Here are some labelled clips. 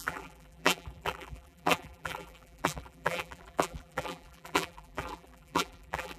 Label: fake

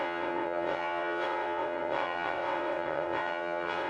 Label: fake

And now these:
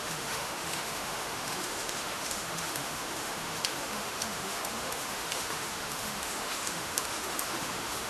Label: fake